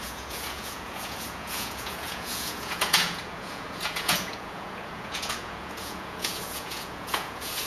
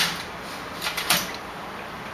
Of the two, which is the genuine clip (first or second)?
second